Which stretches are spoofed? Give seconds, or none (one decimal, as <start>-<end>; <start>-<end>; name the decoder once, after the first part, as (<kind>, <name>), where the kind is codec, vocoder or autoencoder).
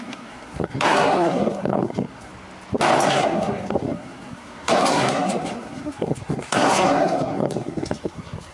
0.0-2.3 (codec, SNAC); 3.1-8.5